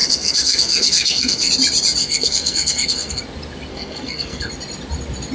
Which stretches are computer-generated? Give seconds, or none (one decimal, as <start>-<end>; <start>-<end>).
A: 0.0-1.5; 2.0-3.2; 3.7-4.5